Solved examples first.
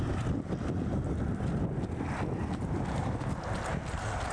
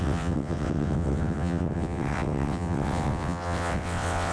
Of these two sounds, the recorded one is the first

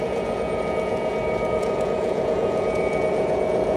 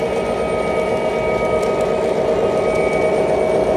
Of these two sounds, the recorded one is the second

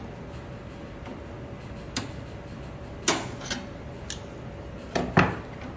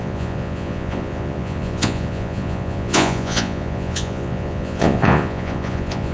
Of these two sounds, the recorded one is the first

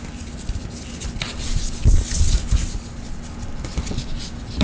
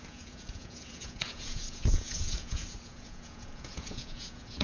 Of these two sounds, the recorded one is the first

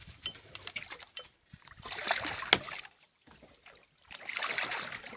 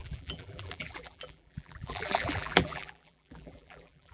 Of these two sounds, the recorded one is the first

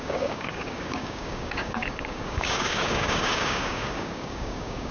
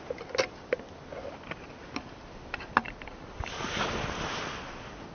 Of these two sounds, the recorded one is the second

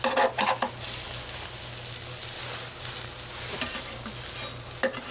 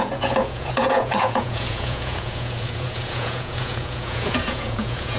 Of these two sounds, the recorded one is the first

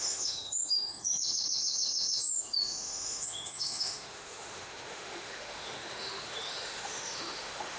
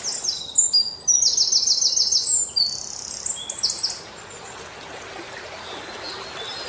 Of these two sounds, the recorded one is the second